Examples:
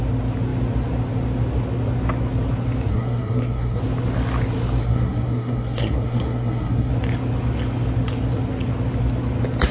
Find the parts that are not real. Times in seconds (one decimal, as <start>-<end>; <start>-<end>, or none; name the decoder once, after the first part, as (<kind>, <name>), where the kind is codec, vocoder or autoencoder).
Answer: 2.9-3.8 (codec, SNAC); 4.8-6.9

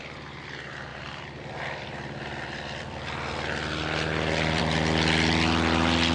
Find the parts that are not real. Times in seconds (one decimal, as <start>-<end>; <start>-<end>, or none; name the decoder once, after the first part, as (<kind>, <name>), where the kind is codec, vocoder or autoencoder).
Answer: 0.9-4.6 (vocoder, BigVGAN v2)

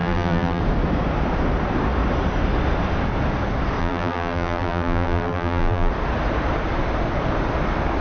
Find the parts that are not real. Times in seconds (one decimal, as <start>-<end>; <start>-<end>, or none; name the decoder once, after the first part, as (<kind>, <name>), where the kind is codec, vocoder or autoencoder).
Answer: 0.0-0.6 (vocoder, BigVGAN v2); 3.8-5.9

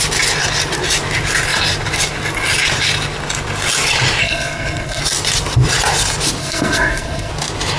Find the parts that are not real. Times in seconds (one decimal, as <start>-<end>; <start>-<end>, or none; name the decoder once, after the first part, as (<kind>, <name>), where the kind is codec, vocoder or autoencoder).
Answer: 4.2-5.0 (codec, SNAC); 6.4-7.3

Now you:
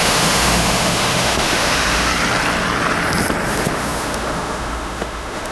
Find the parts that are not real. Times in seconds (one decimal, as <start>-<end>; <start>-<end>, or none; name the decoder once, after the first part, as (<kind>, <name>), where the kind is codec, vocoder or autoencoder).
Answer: 0.0-2.1 (autoencoder, DAC-VAE); 3.5-5.5